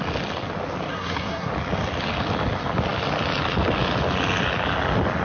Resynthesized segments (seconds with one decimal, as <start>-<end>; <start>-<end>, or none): 0.9-1.5